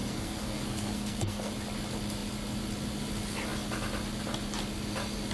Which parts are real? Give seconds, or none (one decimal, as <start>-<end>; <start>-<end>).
1.5-5.3